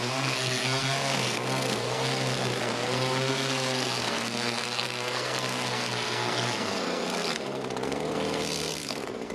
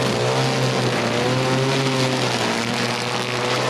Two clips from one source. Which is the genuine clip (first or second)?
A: second